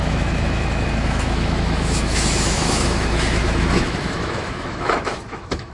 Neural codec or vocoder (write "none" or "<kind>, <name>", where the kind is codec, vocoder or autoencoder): autoencoder, DAC-VAE